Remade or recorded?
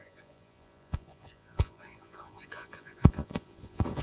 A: remade